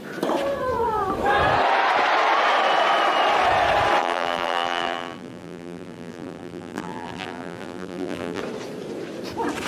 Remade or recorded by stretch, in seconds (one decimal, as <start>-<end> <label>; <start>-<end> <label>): 0.0-4.0 recorded; 4.0-8.4 remade; 8.4-9.7 recorded